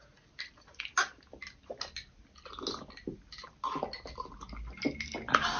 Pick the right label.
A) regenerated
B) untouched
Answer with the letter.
B